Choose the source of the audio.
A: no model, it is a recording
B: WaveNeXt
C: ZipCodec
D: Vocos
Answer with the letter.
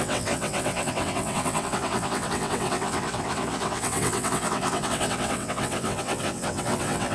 B